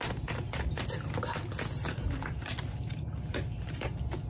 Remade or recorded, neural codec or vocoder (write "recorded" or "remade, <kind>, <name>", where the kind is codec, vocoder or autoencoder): recorded